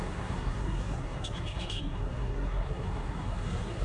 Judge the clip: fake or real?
fake